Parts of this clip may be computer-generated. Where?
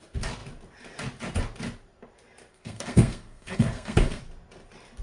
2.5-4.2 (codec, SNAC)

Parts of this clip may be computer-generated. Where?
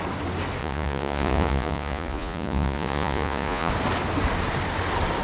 0.6-3.7 (vocoder, Vocos)